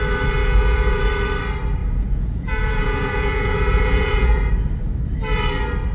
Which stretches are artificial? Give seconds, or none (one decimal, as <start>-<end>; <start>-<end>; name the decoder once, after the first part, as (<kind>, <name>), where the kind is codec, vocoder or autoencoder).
0.4-1.0 (vocoder, Vocos); 1.8-4.5